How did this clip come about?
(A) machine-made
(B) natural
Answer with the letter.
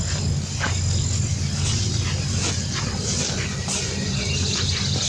B